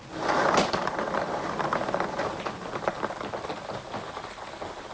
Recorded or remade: recorded